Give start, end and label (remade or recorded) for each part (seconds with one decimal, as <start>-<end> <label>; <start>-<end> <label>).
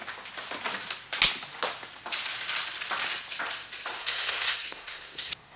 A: 0.0-4.0 recorded; 4.0-5.6 remade